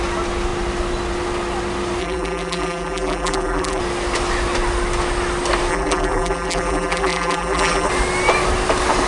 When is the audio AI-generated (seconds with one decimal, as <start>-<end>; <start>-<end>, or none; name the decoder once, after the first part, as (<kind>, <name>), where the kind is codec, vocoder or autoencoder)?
2.0-3.8 (vocoder, BigVGAN v2); 5.7-7.9